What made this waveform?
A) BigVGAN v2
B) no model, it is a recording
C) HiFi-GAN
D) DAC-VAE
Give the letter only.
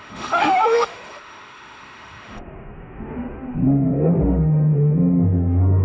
D